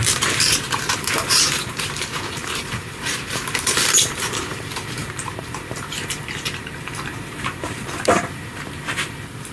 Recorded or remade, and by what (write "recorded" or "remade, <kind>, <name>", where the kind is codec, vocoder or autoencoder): remade, vocoder, BigVGAN v2